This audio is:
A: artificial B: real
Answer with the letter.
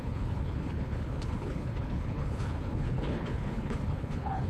A